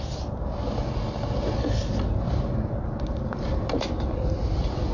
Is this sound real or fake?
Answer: real